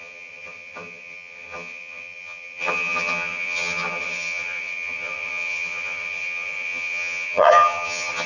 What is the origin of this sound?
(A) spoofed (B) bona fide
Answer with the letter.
A